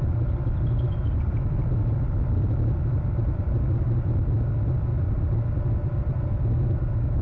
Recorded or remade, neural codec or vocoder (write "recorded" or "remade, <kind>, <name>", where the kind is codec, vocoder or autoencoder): recorded